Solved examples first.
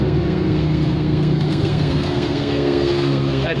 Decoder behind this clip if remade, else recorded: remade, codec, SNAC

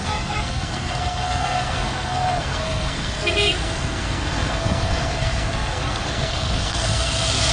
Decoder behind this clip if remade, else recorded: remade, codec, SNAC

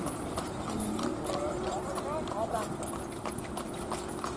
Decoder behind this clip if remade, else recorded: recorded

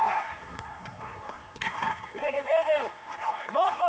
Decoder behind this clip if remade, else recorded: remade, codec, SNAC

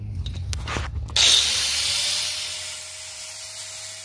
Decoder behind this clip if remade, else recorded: recorded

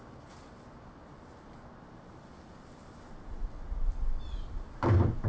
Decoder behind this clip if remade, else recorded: recorded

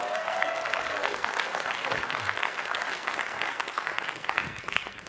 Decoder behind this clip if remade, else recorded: remade, codec, SNAC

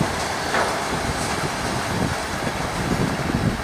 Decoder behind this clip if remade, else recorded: recorded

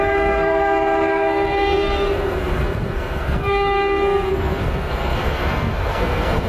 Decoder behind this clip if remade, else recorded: remade, codec, SNAC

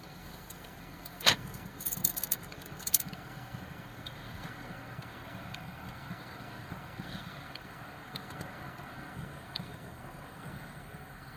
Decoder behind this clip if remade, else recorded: remade, codec, SNAC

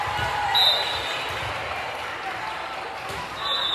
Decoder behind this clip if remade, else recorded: recorded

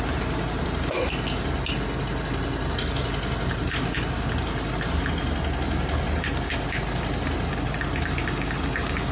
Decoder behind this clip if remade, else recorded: recorded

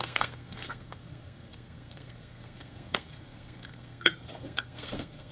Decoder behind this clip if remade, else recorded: remade, codec, SNAC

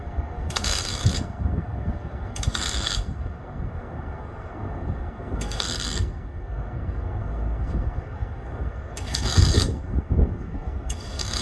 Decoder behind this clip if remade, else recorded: remade, codec, SNAC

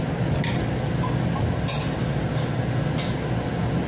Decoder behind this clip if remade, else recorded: recorded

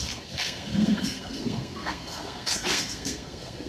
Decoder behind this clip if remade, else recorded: remade, codec, SNAC